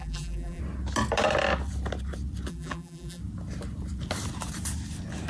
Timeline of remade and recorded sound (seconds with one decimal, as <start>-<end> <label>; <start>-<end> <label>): 0.0-0.6 remade; 0.6-2.5 recorded; 2.5-3.2 remade; 3.2-5.3 recorded